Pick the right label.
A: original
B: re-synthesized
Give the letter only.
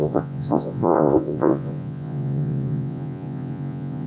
B